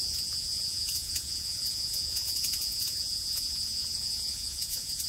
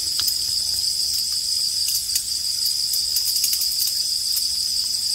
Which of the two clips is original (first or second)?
second